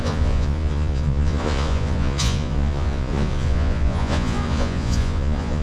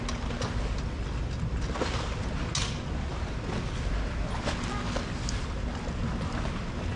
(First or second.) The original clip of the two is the second